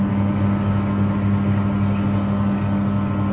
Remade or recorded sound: recorded